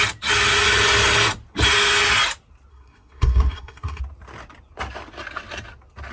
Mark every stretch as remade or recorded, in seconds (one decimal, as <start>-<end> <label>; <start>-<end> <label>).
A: 0.0-2.7 recorded; 2.7-4.0 remade; 4.0-6.1 recorded